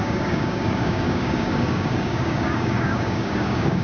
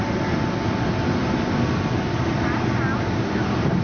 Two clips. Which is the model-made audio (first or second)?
first